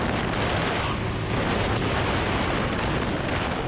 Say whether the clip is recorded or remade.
recorded